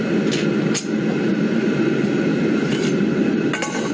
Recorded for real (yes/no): yes